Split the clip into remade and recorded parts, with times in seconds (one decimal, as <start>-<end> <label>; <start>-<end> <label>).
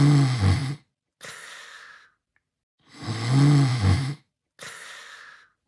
0.0-3.7 recorded; 3.7-4.3 remade; 4.3-5.7 recorded